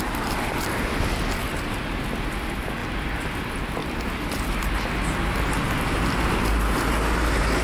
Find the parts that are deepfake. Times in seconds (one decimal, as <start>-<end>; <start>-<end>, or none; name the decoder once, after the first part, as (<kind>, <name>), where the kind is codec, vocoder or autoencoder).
3.8-4.7 (vocoder, BigVGAN v2)